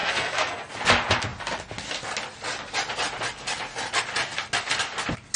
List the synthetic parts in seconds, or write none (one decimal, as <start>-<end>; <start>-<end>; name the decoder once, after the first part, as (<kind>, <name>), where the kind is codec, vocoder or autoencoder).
0.0-0.7 (codec, SNAC)